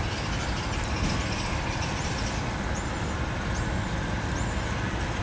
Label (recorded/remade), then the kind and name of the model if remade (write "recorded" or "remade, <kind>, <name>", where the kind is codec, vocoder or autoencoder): recorded